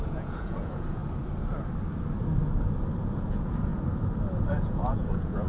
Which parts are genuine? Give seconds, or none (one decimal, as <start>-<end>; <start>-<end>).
1.0-3.0; 3.7-4.5